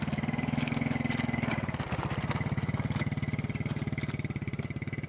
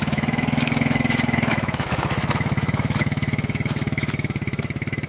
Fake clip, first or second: second